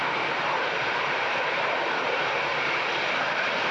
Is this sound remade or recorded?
remade